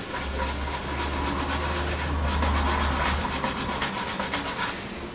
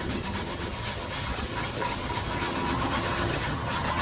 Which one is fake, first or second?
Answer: second